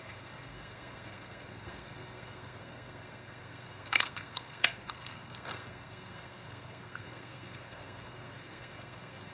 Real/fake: fake